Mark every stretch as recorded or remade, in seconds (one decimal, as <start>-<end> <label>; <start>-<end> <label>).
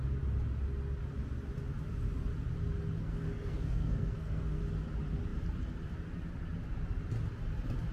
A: 0.0-3.0 recorded; 3.0-4.6 remade; 4.6-7.9 recorded